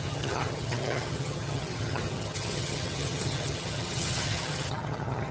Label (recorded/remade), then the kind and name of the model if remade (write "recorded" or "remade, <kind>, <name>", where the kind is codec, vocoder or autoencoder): remade, vocoder, HiFi-GAN